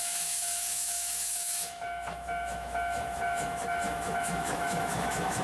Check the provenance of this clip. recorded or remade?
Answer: remade